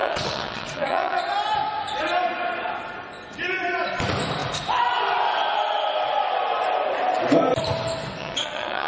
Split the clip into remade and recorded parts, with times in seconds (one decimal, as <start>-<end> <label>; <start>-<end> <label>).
0.0-1.2 remade; 1.2-8.2 recorded; 8.2-8.9 remade